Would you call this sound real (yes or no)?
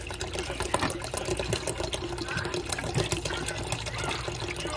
yes